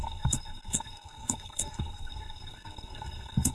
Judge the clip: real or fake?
fake